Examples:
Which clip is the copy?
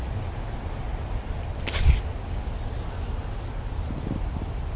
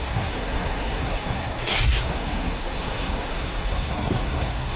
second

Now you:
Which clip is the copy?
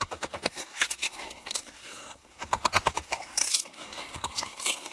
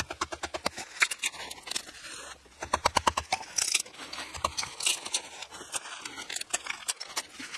first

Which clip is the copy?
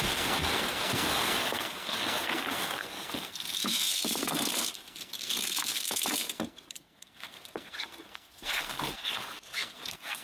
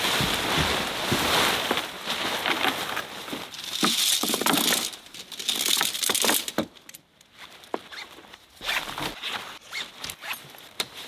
first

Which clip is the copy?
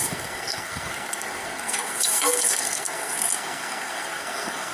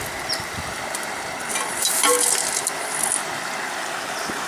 first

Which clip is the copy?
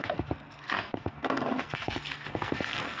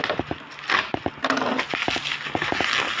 first